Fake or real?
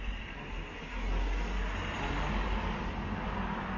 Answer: real